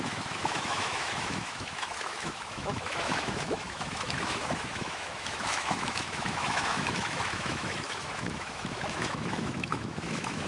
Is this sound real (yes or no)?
no